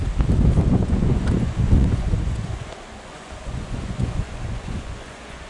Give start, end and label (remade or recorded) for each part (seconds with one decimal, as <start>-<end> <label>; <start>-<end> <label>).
0.0-0.7 recorded; 0.7-5.5 remade